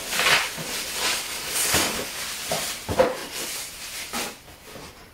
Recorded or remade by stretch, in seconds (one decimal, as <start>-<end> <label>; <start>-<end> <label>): 0.0-1.1 recorded; 1.1-2.2 remade; 2.2-5.1 recorded